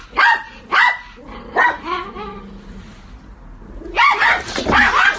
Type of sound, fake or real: real